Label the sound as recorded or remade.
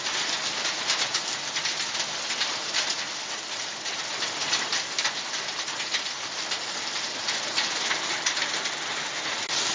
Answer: recorded